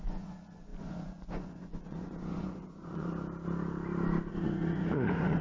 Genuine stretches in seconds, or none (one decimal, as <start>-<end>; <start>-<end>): 3.1-4.3